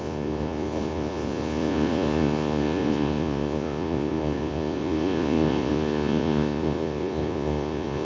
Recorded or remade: remade